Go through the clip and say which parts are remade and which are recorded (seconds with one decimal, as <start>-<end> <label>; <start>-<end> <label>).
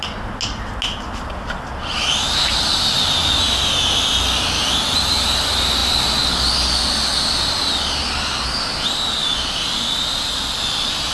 0.0-11.1 recorded